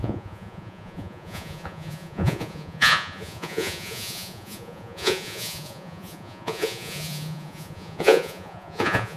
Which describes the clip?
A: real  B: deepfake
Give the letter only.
B